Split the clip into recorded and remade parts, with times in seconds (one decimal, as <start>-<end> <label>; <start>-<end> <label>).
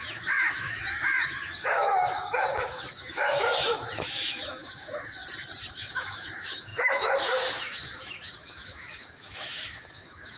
0.0-5.2 remade; 5.2-5.7 recorded; 5.7-10.4 remade